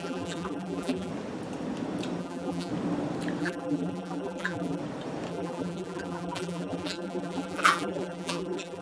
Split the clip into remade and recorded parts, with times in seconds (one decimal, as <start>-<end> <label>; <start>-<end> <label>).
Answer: 0.0-1.1 remade; 1.1-2.2 recorded; 2.2-2.7 remade; 2.7-3.4 recorded; 3.4-4.8 remade; 4.8-5.3 recorded; 5.3-8.8 remade